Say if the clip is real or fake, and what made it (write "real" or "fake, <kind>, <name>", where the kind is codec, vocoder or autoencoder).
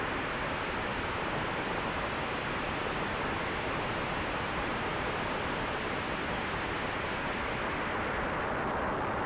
real